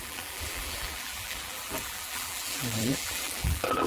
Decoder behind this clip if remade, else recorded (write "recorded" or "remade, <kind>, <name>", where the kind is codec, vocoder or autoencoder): remade, vocoder, BigVGAN v2